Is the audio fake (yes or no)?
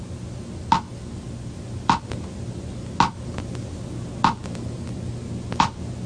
no